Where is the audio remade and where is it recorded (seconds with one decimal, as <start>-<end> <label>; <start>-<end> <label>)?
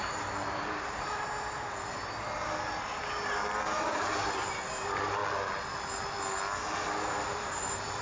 0.0-1.9 remade; 1.9-3.0 recorded; 3.0-5.2 remade; 5.2-7.2 recorded; 7.2-8.0 remade